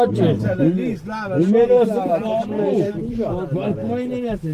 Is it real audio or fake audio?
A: real